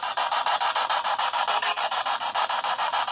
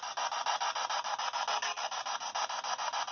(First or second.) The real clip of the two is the second